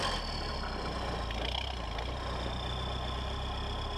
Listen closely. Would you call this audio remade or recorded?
recorded